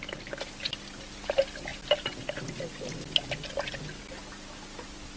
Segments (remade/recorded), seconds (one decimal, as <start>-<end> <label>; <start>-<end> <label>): 0.0-5.2 recorded